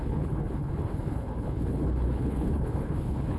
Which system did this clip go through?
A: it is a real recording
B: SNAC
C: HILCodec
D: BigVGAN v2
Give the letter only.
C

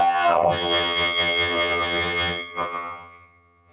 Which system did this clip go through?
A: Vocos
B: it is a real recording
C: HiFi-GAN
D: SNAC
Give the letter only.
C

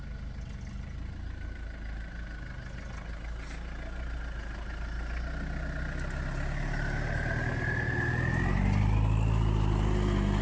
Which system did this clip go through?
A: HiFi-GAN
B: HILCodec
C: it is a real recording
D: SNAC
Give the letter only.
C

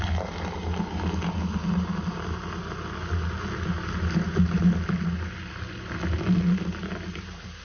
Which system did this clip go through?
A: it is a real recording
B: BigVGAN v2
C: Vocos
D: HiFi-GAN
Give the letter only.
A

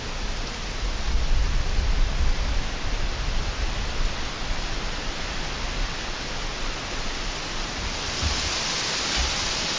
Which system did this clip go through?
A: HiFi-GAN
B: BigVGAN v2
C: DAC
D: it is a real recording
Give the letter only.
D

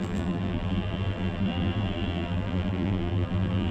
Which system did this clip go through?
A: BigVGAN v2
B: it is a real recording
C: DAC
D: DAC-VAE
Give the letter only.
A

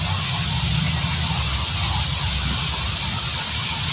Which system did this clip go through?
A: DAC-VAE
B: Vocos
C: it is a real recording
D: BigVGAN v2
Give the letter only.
C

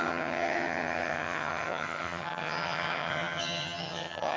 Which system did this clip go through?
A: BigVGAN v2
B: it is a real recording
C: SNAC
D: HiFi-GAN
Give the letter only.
D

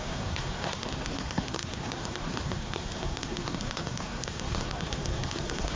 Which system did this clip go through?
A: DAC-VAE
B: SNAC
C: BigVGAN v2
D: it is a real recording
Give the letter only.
B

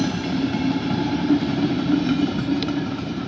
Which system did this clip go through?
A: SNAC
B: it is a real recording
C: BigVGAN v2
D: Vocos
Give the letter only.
C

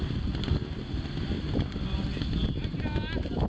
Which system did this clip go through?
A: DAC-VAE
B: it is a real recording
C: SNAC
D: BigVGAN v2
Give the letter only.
B